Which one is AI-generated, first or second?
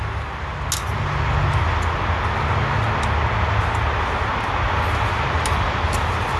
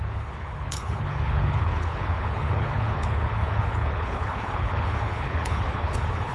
second